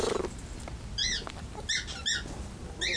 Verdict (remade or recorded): recorded